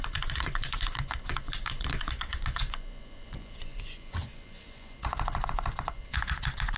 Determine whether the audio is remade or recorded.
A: remade